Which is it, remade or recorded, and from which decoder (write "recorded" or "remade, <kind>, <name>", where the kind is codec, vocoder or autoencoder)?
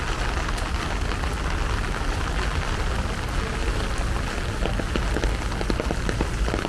recorded